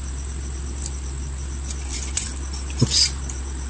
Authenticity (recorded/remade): recorded